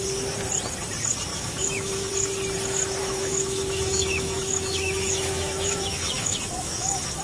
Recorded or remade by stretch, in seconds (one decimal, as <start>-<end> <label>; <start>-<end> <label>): 0.0-1.3 recorded; 1.3-2.1 remade; 2.1-3.0 recorded; 3.0-7.2 remade